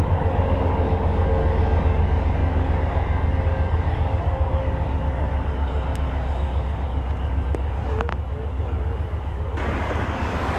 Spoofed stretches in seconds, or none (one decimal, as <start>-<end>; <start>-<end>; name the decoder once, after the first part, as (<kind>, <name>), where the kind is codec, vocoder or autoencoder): 0.0-10.6 (codec, DAC)